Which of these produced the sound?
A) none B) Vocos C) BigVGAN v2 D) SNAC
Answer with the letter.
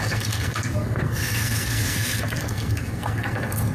D